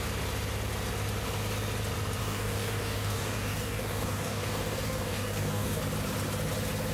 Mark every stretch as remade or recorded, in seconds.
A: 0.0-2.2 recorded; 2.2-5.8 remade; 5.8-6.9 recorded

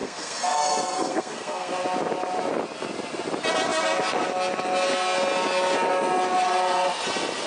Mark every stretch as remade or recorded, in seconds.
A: 0.0-1.7 remade; 1.7-7.5 recorded